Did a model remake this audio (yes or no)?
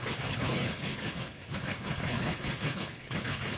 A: yes